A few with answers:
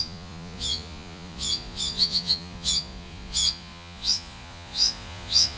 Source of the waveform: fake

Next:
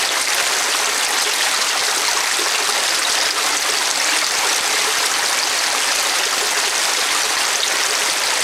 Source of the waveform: real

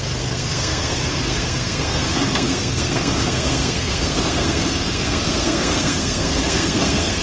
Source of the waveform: fake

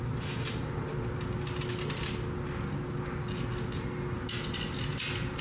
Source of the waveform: real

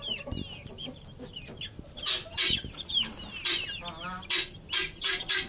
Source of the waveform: real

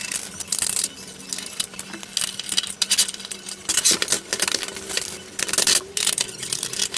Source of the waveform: real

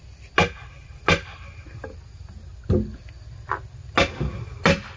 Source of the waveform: real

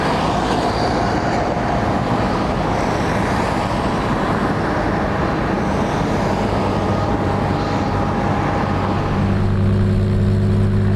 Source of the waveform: real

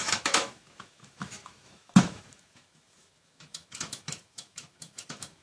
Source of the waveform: fake